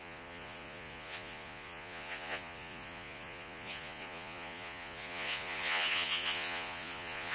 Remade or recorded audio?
remade